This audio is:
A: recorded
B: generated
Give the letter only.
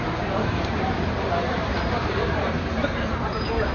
B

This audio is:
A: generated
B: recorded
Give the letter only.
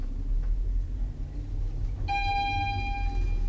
B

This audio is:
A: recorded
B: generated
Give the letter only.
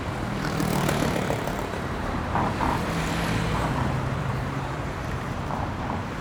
B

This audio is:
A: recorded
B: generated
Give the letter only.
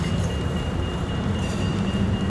B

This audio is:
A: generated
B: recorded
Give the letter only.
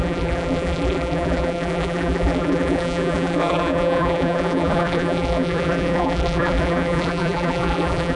A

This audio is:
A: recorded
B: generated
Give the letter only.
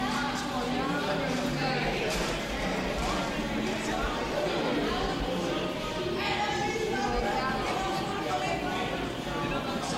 A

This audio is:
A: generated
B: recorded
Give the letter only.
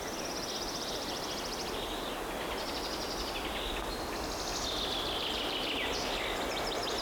B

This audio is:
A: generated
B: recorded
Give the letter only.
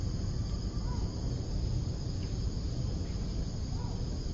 A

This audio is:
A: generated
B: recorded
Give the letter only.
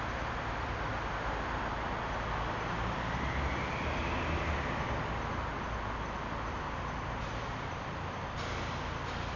B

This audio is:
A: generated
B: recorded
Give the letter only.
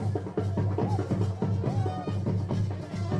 B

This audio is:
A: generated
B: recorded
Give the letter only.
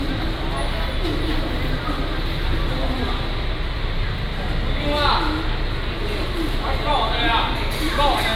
B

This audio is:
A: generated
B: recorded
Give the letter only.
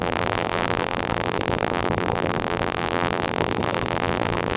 A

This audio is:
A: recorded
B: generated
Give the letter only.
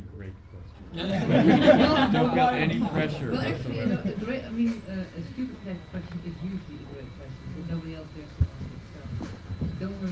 A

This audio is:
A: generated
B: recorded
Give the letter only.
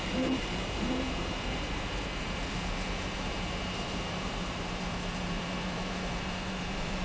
A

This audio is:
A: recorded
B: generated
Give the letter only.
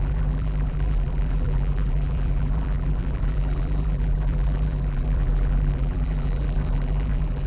B